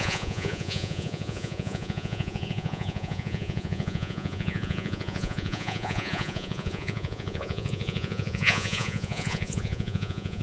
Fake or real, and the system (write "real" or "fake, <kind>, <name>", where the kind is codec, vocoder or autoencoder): fake, vocoder, Vocos